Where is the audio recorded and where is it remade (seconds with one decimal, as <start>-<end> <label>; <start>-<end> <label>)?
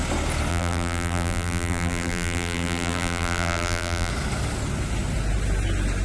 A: 0.0-0.5 recorded; 0.5-4.1 remade; 4.1-6.0 recorded